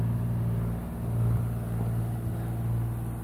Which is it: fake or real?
real